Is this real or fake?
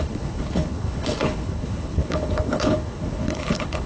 fake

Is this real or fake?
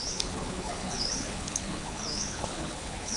fake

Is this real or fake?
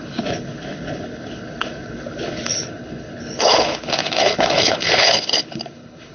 fake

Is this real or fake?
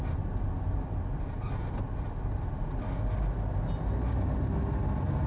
real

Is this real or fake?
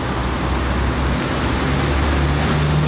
real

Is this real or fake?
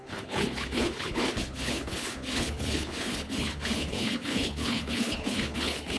fake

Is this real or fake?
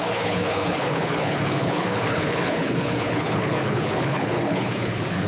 fake